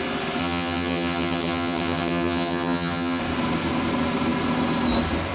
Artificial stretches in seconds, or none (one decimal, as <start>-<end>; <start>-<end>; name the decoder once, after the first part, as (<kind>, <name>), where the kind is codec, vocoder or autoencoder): 0.4-3.2 (vocoder, HiFi-GAN)